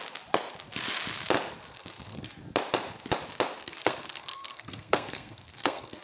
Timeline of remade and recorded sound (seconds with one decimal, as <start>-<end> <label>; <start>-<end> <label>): 0.0-1.7 recorded; 1.7-2.3 remade; 2.3-3.6 recorded; 3.6-6.0 remade